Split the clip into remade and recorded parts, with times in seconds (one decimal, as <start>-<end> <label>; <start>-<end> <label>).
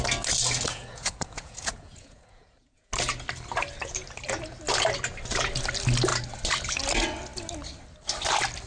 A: 0.0-0.7 recorded; 0.7-2.9 remade; 2.9-8.7 recorded